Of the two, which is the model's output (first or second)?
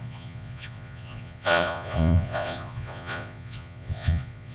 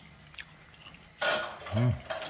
first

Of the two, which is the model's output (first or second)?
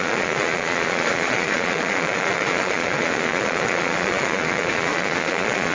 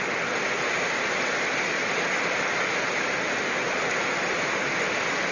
first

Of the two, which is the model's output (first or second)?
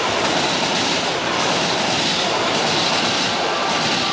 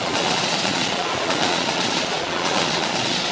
second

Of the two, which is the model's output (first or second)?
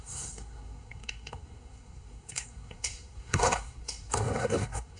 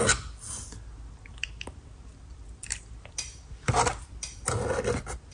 first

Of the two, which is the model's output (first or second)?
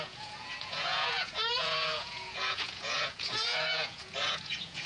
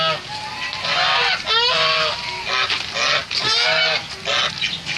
first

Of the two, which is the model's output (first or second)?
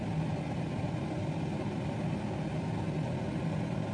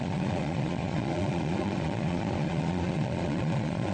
second